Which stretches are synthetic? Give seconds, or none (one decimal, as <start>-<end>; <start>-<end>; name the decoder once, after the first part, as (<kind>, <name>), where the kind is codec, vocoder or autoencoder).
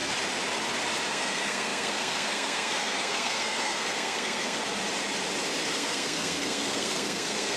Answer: 1.1-4.6 (codec, SNAC); 5.7-7.6